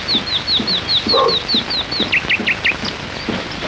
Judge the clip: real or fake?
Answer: real